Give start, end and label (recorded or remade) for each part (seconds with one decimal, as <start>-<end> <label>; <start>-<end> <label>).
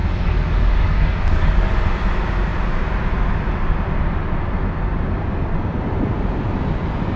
0.0-1.7 remade; 1.7-7.2 recorded